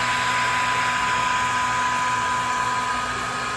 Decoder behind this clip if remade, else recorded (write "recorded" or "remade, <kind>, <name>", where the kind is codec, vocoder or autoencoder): recorded